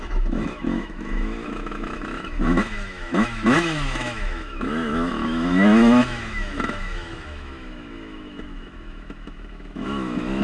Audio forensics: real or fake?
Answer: fake